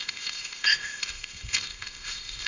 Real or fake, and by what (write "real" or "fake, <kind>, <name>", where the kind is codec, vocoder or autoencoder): fake, codec, ZipCodec